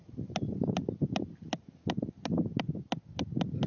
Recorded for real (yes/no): yes